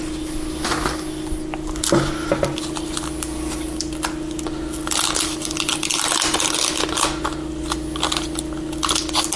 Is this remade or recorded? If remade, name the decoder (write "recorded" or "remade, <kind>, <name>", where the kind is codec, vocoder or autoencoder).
recorded